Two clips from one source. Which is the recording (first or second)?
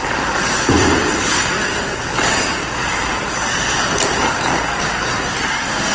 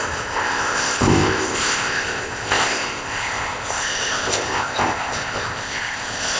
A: first